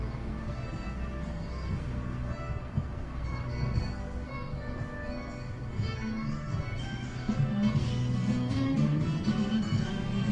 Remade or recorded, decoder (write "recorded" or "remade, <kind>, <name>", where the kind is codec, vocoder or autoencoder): remade, codec, SNAC